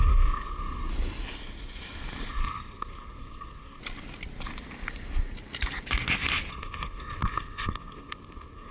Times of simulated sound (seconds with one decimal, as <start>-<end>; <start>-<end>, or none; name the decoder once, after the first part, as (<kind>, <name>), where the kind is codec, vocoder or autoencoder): 0.0-0.9 (codec, SNAC); 2.3-3.8; 6.5-8.7